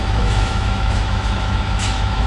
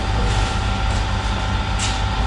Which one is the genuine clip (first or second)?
second